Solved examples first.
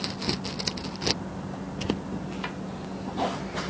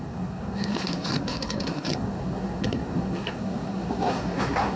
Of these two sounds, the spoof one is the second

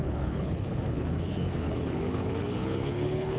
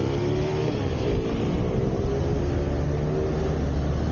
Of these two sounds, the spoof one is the first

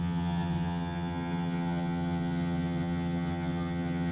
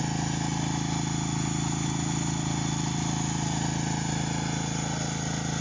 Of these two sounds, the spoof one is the first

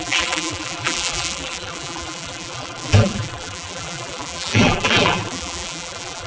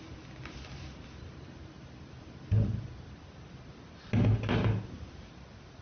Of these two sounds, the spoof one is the first